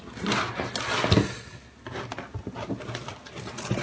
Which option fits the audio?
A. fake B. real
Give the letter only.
B